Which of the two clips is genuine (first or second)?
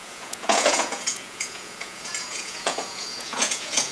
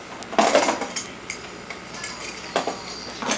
second